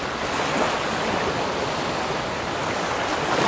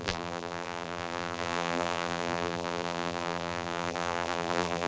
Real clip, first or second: first